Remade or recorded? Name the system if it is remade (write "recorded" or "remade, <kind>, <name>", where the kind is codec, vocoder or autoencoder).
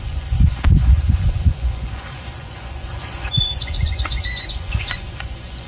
remade, vocoder, Vocos